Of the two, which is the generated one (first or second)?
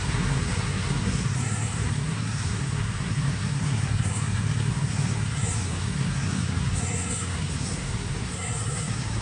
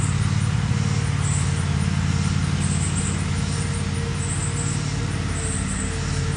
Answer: first